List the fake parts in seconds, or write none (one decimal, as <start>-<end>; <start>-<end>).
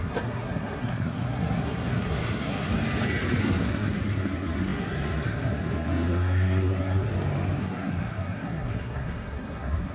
0.0-2.7; 3.4-7.1; 7.6-9.9